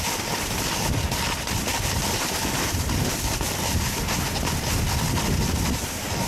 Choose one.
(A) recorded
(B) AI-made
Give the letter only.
A